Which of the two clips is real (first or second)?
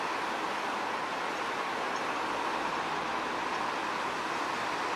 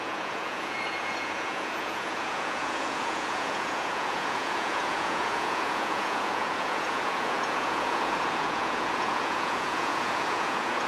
first